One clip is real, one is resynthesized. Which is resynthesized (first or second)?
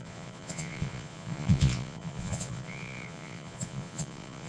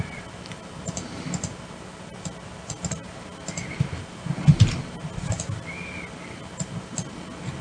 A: first